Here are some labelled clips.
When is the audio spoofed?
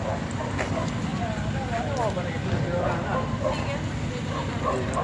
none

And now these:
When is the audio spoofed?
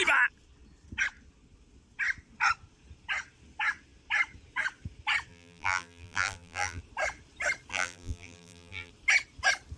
5.3-6.8 (vocoder, BigVGAN v2); 7.7-8.9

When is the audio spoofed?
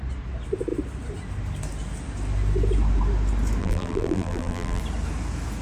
3.6-4.8 (vocoder, BigVGAN v2)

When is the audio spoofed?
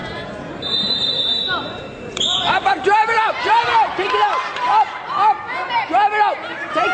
0.0-3.7 (vocoder, BigVGAN v2)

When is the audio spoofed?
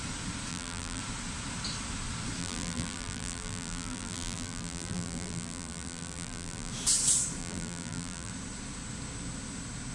0.5-1.0 (vocoder, BigVGAN v2); 2.4-6.7; 7.4-8.3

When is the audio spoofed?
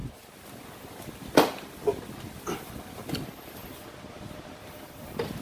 2.4-3.6 (vocoder, BigVGAN v2); 4.5-5.4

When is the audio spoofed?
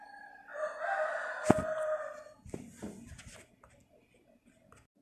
none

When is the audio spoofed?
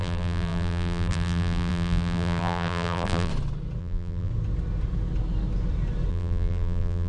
0.0-3.3 (vocoder, BigVGAN v2); 3.8-4.3; 6.1-7.1